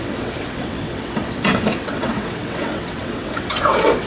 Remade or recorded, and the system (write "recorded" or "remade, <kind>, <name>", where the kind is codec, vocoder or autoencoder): remade, vocoder, WaveNeXt